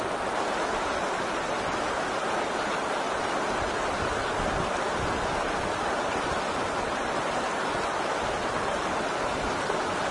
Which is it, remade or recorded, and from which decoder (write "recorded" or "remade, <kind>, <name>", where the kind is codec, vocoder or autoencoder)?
recorded